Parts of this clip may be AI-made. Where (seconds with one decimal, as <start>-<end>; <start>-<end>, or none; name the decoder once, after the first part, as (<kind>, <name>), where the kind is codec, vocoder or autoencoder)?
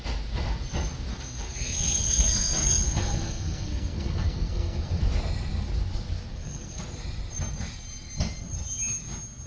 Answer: 1.1-5.0 (codec, SNAC); 6.3-6.8